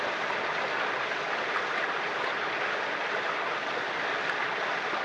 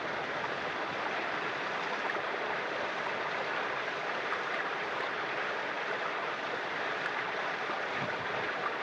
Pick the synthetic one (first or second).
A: second